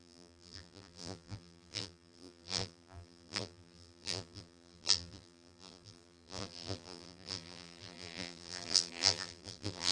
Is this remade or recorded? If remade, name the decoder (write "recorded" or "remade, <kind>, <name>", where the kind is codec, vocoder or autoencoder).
remade, vocoder, BigVGAN v2